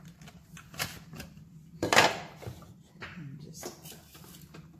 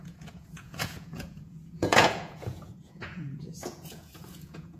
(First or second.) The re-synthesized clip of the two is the second